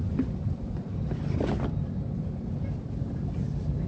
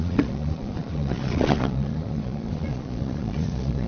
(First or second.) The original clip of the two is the first